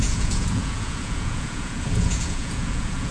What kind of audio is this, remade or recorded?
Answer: remade